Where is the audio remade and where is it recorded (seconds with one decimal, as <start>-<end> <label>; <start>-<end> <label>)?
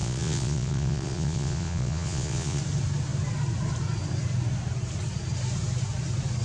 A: 0.0-2.6 remade; 2.6-6.4 recorded